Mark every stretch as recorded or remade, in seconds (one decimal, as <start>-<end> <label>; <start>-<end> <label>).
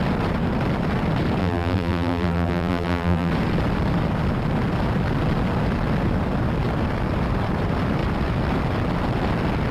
0.0-1.4 recorded; 1.4-3.3 remade; 3.3-9.7 recorded